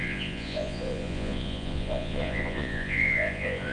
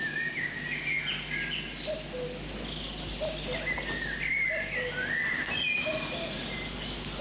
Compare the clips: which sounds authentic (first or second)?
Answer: second